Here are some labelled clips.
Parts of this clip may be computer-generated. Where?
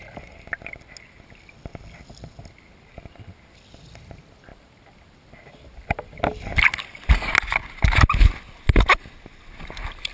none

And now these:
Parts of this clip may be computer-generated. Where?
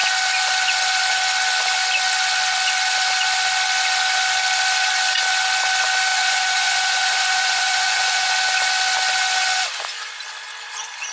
6.1-8.3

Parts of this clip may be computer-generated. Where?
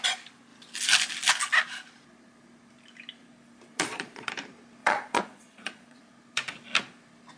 3.7-4.3; 4.8-6.0